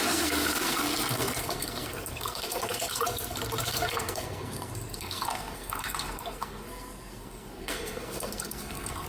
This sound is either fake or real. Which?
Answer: fake